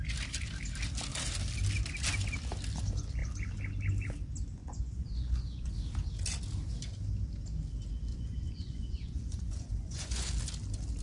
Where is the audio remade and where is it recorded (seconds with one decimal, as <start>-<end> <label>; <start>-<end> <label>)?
0.0-4.6 recorded; 4.6-5.7 remade; 5.7-8.1 recorded; 8.1-10.3 remade; 10.3-11.0 recorded